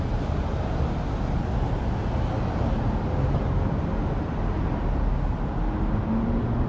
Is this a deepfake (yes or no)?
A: no